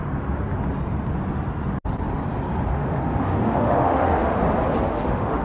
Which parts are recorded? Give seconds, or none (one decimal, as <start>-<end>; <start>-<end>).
0.0-2.7; 4.4-4.9